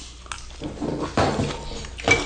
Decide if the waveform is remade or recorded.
recorded